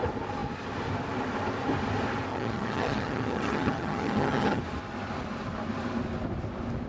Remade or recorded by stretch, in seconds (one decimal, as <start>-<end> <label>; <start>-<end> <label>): 0.0-2.3 recorded; 2.3-4.6 remade; 4.6-6.9 recorded